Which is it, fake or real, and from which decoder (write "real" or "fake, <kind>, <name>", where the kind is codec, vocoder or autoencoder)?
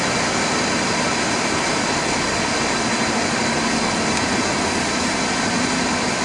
real